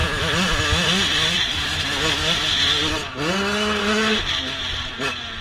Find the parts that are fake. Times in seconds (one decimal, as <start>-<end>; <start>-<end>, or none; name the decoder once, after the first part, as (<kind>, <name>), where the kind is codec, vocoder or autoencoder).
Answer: 0.0-1.6 (vocoder, BigVGAN v2)